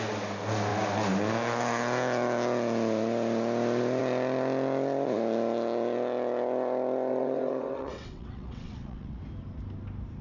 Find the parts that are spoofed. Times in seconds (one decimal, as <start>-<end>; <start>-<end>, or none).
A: 7.1-9.2